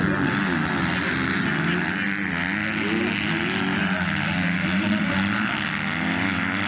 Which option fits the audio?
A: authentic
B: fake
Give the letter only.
A